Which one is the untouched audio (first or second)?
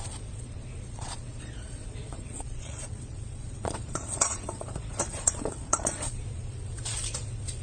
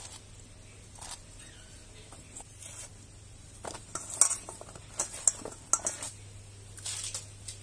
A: second